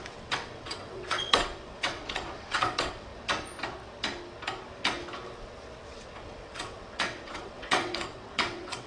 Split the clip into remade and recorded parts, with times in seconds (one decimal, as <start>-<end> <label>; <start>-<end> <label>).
0.0-3.1 remade; 3.1-5.8 recorded; 5.8-8.9 remade